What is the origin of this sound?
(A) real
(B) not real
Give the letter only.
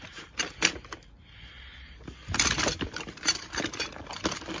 A